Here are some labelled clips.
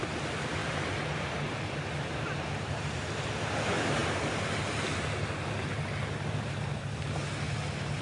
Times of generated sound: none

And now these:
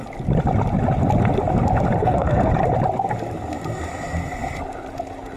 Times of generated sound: 2.0-2.5

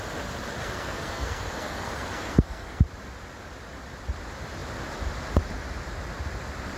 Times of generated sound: 0.6-2.8

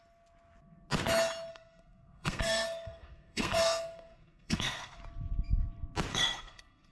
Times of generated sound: 1.5-5.0; 6.1-6.9

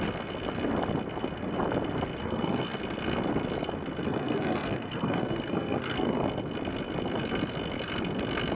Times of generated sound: 2.2-2.8; 4.0-6.2

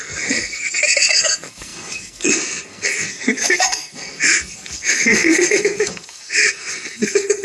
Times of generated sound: 0.0-7.4

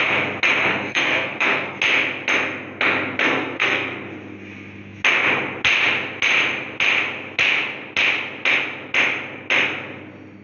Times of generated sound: 0.7-1.8; 3.2-4.0